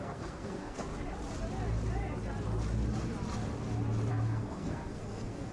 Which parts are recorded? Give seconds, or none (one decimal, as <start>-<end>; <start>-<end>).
0.9-4.1